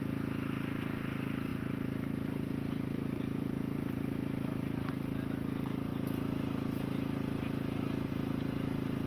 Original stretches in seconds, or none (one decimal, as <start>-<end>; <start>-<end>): 0.0-1.5; 4.9-9.1